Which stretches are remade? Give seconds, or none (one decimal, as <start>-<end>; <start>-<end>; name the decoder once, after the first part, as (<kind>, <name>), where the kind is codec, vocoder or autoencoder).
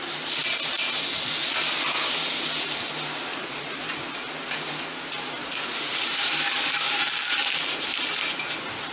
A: 3.3-3.8 (vocoder, Vocos); 5.4-6.0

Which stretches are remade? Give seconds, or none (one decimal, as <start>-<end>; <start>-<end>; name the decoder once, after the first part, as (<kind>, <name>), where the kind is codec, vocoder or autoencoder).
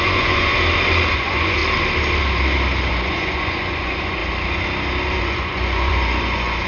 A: 0.0-0.5 (vocoder, Vocos); 1.1-1.6; 2.9-4.2; 5.2-6.7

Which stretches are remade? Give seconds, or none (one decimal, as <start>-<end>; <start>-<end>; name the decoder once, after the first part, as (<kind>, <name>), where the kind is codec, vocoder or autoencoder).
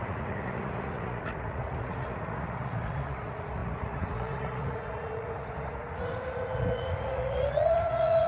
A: 0.0-8.3 (vocoder, Vocos)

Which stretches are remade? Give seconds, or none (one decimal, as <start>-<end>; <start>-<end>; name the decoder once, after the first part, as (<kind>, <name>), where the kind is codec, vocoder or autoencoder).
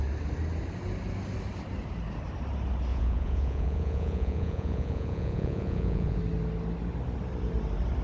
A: 2.9-6.2 (vocoder, Vocos)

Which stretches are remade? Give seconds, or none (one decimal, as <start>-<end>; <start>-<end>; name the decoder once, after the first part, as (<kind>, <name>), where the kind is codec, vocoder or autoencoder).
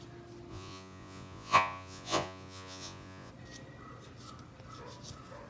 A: 0.5-3.3 (vocoder, Vocos)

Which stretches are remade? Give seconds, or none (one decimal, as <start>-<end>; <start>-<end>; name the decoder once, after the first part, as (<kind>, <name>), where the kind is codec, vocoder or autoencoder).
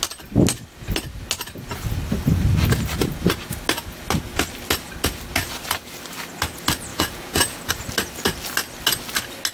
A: 6.9-7.7 (vocoder, Vocos)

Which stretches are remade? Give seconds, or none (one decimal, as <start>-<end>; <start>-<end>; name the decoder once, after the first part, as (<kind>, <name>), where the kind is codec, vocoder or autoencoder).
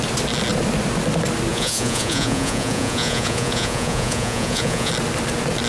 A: 1.5-4.9 (vocoder, Vocos)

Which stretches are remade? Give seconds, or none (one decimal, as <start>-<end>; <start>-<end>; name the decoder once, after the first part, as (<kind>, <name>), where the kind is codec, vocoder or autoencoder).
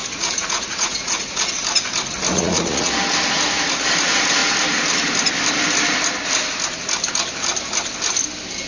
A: 0.0-1.5 (vocoder, Vocos); 2.3-2.9